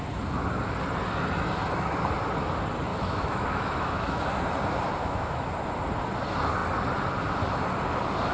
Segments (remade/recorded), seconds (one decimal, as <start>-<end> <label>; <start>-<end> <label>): 0.0-2.9 recorded; 2.9-4.2 remade; 4.2-5.0 recorded; 5.0-5.5 remade; 5.5-8.3 recorded